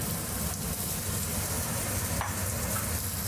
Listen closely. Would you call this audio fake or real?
real